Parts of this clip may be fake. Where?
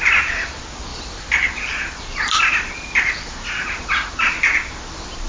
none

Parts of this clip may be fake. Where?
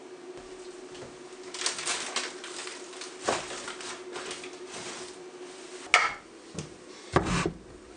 none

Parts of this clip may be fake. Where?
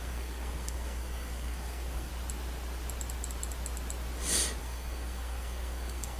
0.0-2.1 (codec, SNAC); 4.6-6.2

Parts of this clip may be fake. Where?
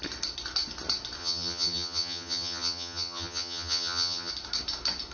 1.2-4.3 (vocoder, HiFi-GAN)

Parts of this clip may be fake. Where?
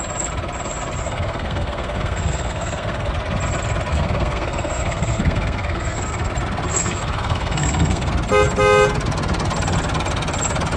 1.0-3.1 (codec, SNAC); 3.9-6.3; 6.8-8.1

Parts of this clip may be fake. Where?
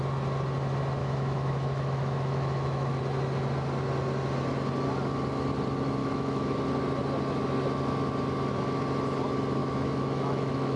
1.0-3.0 (autoencoder, DAC-VAE); 6.0-6.6; 9.6-10.8